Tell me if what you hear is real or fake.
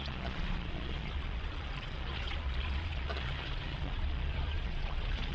fake